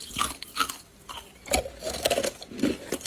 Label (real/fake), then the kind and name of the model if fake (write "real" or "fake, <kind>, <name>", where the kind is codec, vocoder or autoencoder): real